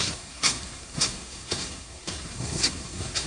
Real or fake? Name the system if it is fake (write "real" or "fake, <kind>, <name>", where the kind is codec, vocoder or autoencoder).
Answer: fake, codec, SNAC